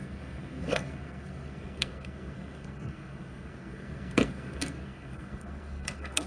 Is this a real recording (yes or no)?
no